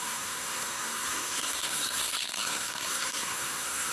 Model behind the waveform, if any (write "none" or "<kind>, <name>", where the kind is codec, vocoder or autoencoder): codec, SNAC